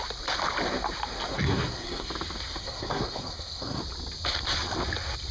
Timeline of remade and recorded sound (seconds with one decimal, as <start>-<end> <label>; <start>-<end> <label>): 0.0-1.3 recorded; 1.3-2.1 remade; 2.1-2.6 recorded; 2.6-3.8 remade; 3.8-5.3 recorded